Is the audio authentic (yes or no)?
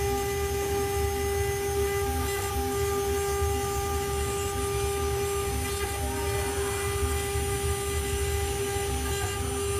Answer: yes